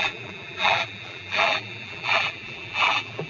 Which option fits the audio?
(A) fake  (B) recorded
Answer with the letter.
A